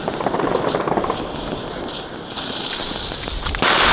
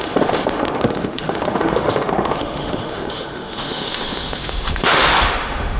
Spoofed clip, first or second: second